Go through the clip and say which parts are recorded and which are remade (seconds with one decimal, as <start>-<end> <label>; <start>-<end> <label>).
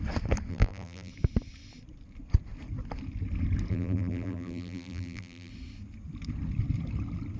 0.0-0.5 recorded; 0.5-1.1 remade; 1.1-3.7 recorded; 3.7-5.5 remade; 5.5-7.4 recorded